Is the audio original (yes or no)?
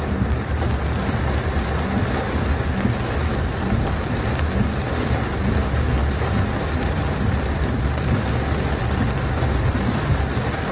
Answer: yes